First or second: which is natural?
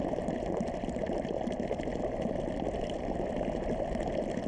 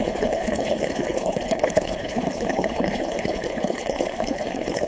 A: first